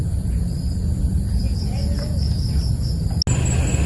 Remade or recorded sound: recorded